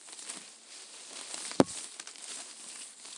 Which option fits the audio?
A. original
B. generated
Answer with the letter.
A